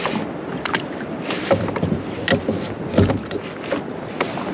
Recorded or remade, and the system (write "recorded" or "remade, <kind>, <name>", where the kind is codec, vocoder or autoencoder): recorded